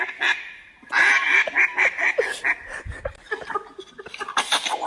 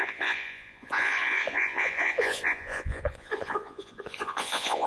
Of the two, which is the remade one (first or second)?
second